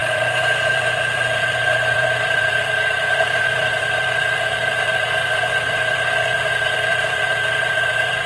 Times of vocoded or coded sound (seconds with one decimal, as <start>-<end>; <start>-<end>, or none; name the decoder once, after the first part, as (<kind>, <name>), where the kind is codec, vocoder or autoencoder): 0.0-8.3 (vocoder, BigVGAN v2)